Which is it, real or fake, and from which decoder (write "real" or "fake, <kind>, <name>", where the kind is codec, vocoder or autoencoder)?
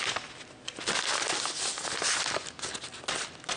real